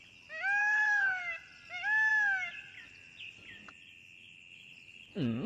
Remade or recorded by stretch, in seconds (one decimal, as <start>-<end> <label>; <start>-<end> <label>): 0.0-0.6 recorded; 0.6-1.2 remade; 1.2-5.5 recorded